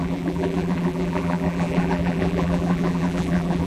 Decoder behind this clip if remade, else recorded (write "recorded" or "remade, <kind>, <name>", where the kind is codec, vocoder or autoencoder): remade, vocoder, BigVGAN v2